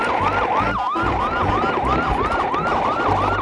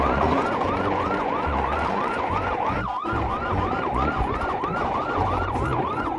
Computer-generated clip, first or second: second